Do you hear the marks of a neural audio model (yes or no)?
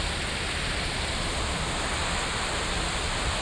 no